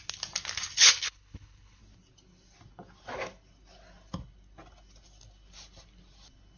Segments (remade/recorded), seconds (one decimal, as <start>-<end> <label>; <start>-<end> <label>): 0.0-0.8 recorded; 0.8-1.8 remade; 1.8-6.6 recorded